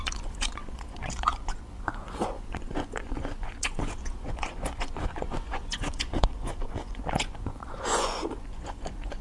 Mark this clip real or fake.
fake